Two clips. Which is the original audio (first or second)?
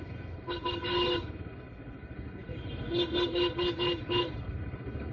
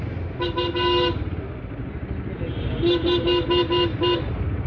second